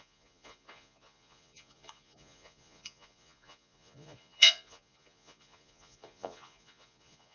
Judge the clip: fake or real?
fake